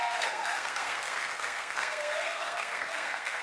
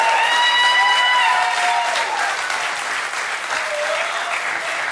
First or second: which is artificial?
first